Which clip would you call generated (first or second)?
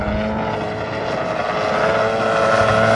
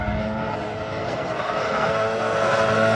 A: second